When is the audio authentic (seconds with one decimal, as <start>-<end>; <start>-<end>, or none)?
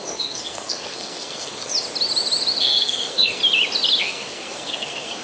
1.7-2.6; 3.4-4.0